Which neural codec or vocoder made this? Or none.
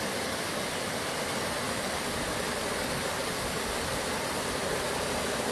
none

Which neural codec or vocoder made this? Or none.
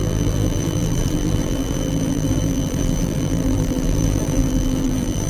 vocoder, BigVGAN v2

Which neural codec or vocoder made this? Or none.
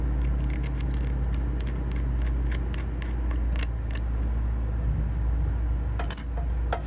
none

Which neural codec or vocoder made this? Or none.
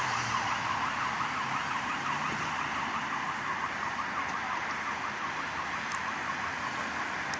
none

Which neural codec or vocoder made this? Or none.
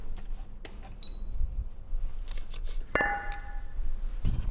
none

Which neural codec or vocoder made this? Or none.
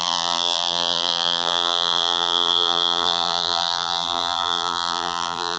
vocoder, BigVGAN v2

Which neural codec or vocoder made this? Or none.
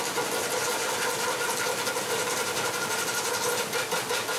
vocoder, BigVGAN v2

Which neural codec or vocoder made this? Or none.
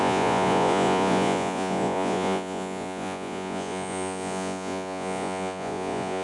vocoder, Vocos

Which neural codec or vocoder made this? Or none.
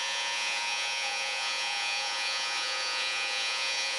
vocoder, Vocos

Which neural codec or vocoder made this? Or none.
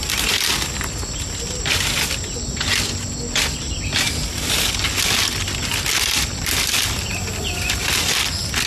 none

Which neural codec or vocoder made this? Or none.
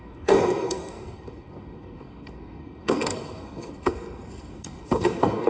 codec, SNAC